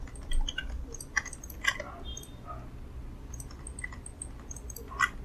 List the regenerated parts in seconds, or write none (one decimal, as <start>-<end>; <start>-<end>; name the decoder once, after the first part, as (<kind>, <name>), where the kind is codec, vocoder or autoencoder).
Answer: none